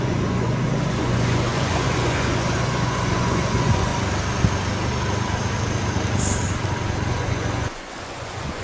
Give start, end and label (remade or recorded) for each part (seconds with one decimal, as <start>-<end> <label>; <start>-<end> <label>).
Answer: 0.0-3.9 remade; 3.9-7.1 recorded; 7.1-8.6 remade